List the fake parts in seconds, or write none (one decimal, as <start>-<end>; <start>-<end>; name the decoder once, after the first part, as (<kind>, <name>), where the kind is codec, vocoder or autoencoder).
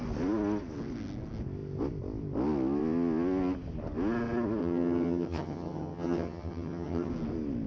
4.6-7.1 (vocoder, HiFi-GAN)